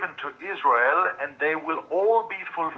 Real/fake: fake